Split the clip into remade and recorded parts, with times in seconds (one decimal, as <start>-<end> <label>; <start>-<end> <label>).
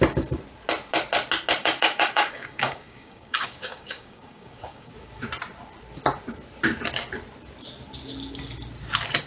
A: 0.0-1.6 recorded; 1.6-4.9 remade; 4.9-9.3 recorded